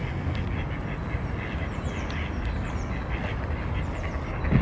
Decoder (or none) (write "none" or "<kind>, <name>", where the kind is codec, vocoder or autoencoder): none